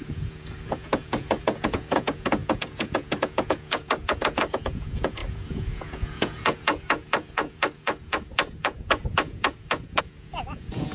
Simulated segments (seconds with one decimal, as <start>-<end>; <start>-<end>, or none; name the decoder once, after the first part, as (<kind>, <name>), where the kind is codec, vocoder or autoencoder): 0.0-10.9 (vocoder, Vocos)